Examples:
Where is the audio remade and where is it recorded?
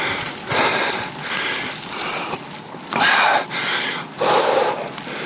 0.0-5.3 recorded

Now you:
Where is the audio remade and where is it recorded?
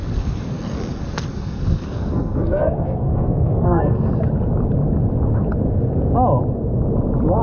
0.0-4.1 remade; 4.1-7.4 recorded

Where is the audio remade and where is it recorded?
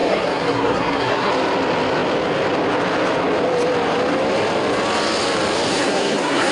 0.0-1.3 remade; 1.3-5.7 recorded; 5.7-6.5 remade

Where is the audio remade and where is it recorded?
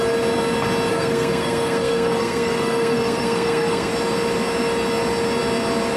0.0-0.9 recorded; 0.9-3.9 remade; 3.9-6.0 recorded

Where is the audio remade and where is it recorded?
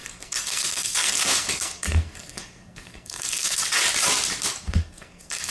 0.0-3.6 remade; 3.6-4.5 recorded; 4.5-5.5 remade